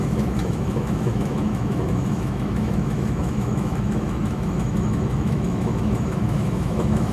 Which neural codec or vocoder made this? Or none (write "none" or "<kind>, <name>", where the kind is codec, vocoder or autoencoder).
autoencoder, DAC-VAE